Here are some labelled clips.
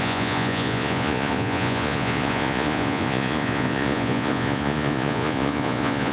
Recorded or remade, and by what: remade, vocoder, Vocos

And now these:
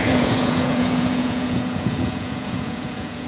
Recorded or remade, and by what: remade, vocoder, Vocos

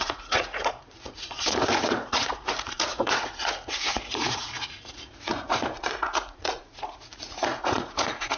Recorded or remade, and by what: remade, vocoder, Vocos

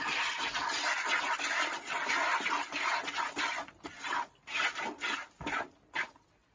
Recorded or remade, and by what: recorded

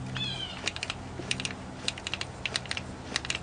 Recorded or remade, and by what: recorded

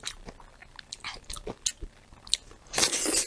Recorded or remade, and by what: recorded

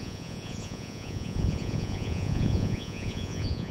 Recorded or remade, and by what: remade, vocoder, Vocos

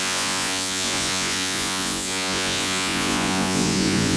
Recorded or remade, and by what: remade, vocoder, Vocos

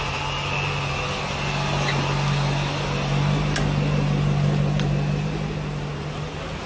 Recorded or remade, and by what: recorded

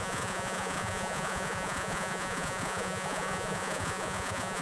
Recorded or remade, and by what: remade, vocoder, Vocos